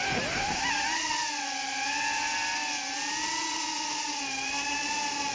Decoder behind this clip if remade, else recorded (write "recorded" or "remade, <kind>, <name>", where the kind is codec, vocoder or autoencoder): recorded